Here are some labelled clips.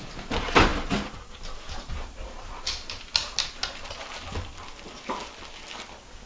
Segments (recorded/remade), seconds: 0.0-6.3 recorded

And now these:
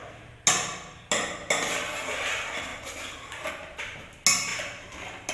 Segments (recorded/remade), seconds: 0.0-5.3 recorded

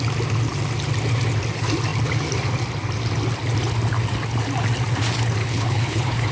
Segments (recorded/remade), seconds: 0.0-5.4 recorded; 5.4-6.3 remade

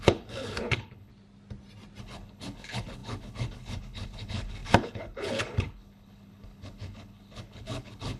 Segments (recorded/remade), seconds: 0.0-1.1 remade; 1.1-2.0 recorded; 2.0-8.2 remade

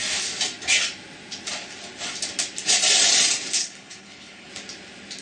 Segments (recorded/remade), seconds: 0.0-3.6 recorded; 3.6-4.5 remade; 4.5-5.2 recorded